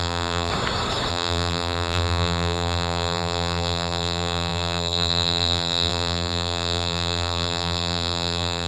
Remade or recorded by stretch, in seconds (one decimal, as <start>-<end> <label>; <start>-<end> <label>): 0.0-0.5 remade; 0.5-1.1 recorded; 1.1-8.7 remade